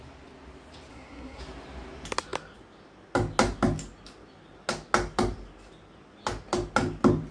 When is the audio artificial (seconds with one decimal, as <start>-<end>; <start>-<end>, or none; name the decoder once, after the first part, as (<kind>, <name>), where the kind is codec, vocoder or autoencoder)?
0.9-1.4 (codec, SNAC)

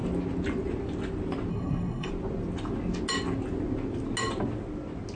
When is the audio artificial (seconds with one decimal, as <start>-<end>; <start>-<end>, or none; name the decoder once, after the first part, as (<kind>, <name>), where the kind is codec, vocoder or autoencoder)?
1.5-2.1 (codec, SNAC)